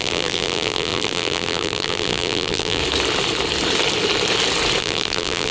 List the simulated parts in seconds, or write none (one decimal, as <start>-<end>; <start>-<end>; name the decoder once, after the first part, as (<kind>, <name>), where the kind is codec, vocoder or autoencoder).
0.0-2.8 (vocoder, BigVGAN v2); 4.8-5.5